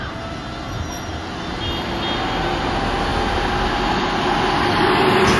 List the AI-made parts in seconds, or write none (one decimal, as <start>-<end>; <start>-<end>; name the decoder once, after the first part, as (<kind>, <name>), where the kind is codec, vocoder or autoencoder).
none